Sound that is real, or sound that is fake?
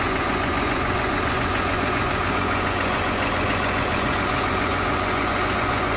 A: fake